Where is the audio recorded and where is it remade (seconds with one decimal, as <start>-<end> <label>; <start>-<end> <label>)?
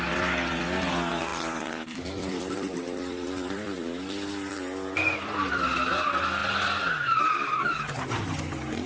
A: 0.0-1.3 recorded; 1.3-4.3 remade; 4.3-8.9 recorded